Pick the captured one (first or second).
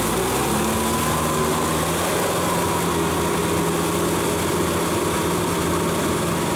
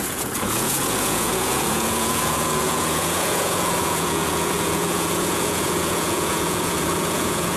first